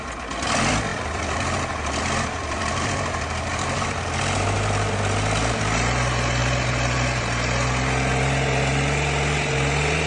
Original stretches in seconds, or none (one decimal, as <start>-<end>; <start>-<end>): 0.0-0.9; 4.9-10.1